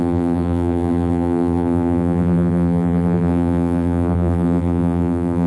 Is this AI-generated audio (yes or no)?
yes